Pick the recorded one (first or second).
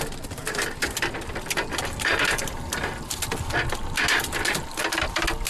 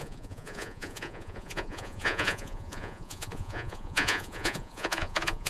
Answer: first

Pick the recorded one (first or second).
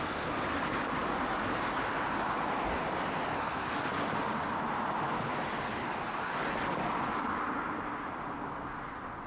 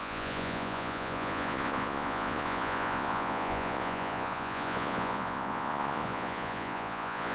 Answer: first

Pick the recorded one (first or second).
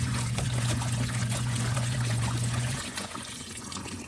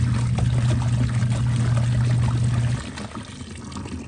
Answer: second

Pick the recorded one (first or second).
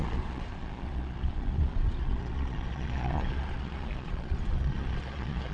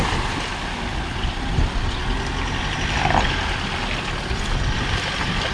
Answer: second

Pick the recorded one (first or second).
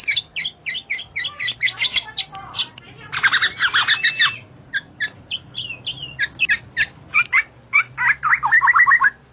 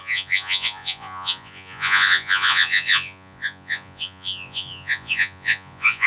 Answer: first